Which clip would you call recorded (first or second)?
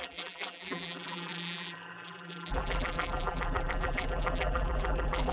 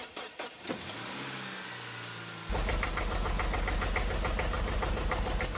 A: second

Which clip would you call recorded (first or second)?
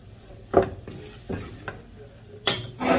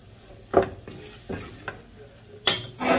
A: second